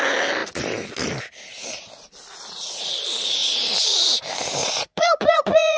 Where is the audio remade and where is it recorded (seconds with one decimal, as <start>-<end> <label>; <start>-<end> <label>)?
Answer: 0.0-4.6 recorded; 4.6-5.8 remade